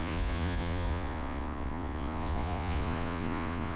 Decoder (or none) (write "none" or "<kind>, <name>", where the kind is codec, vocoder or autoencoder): vocoder, Vocos